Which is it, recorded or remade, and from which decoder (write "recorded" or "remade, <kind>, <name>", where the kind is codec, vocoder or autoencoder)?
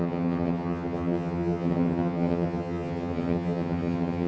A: remade, vocoder, HiFi-GAN